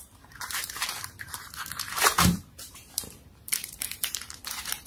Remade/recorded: remade